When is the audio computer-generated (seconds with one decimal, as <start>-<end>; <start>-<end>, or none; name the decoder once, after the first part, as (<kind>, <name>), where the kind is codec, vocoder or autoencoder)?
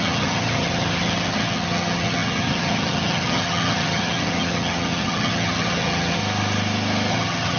0.0-6.2 (vocoder, HiFi-GAN); 7.1-7.6